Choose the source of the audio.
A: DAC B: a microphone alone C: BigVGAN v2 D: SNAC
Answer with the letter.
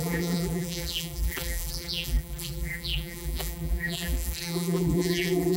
C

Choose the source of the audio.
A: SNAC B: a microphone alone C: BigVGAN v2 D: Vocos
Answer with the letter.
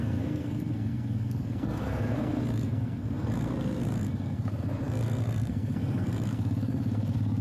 A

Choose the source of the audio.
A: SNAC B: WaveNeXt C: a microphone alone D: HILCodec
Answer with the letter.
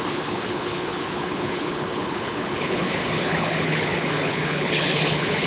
D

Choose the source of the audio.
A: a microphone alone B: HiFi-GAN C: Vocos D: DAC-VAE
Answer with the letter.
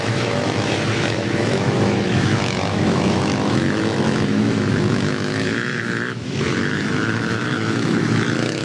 D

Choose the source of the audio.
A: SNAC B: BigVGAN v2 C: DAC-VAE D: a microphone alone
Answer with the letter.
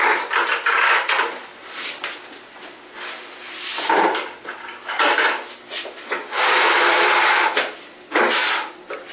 D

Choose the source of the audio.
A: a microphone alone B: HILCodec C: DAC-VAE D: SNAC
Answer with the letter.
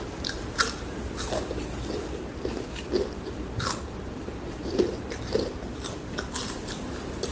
A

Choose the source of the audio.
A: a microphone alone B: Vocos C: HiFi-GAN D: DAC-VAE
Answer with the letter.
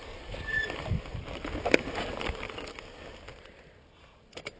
A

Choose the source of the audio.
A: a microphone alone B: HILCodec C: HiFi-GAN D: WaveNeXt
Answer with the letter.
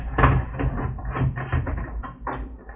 A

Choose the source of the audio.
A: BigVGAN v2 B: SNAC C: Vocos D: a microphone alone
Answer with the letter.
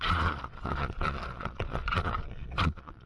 C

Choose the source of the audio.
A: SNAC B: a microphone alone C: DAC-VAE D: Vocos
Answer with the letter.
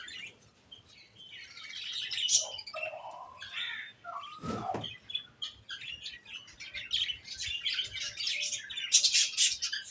B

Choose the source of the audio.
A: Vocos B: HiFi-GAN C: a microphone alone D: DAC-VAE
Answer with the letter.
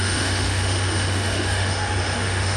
D